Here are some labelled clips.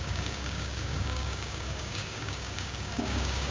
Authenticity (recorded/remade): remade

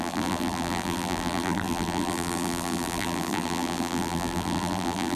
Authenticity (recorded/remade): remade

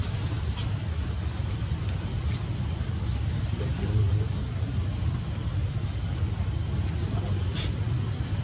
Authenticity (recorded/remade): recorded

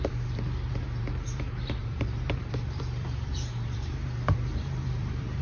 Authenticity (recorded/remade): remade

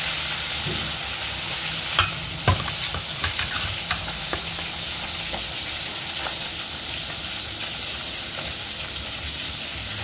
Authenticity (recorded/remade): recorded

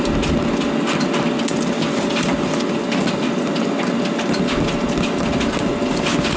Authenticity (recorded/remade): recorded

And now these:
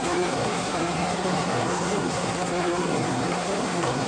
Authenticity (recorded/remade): remade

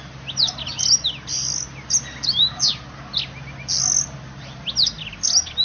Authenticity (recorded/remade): recorded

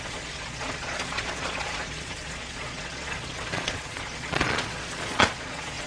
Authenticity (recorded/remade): remade